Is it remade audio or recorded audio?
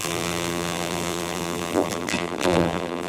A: remade